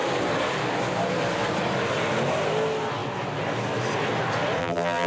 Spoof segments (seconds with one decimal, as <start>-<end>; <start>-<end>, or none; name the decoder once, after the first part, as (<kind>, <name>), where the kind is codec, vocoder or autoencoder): 4.6-5.1 (vocoder, BigVGAN v2)